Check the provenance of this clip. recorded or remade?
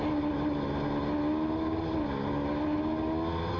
recorded